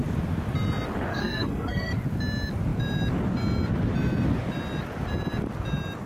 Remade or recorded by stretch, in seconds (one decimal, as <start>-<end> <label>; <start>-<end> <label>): 0.0-1.1 recorded; 1.1-1.9 remade; 1.9-6.1 recorded